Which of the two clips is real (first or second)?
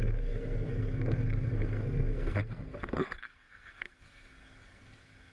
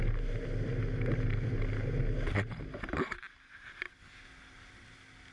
second